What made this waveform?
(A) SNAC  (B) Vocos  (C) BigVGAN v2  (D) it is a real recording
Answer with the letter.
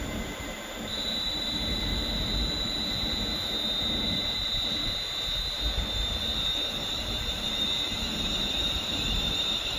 C